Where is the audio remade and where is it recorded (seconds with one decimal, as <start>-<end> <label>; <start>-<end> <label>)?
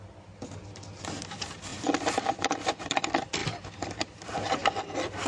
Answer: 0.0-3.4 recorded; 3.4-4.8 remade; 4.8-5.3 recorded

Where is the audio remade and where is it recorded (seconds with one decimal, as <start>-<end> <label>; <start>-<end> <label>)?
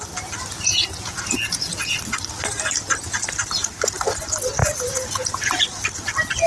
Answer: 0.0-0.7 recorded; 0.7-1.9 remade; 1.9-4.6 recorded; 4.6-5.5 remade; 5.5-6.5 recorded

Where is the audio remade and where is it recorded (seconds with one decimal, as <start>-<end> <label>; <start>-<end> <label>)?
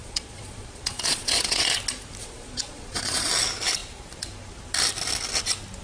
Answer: 0.0-1.7 remade; 1.7-2.2 recorded; 2.2-3.3 remade; 3.3-5.8 recorded